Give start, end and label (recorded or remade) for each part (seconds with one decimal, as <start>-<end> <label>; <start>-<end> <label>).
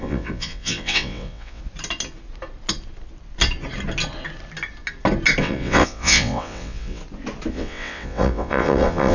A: 0.0-1.6 remade; 1.6-5.4 recorded; 5.4-7.0 remade; 7.0-7.5 recorded; 7.5-9.1 remade